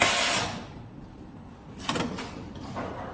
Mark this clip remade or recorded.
recorded